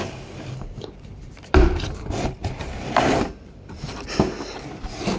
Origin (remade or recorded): remade